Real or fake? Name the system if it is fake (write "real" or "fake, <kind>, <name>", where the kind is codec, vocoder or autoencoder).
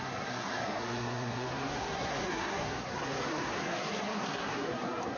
fake, codec, SNAC